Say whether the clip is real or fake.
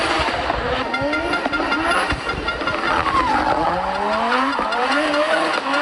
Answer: real